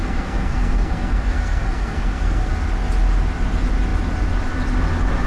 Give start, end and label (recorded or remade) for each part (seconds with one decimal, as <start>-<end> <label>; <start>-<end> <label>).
0.0-2.5 remade; 2.5-5.3 recorded